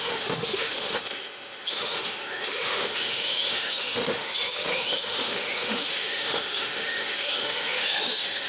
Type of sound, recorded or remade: remade